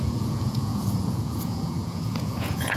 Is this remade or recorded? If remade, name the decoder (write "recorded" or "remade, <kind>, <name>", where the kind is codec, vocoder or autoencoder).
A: remade, vocoder, Vocos